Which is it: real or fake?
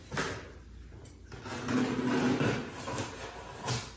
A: real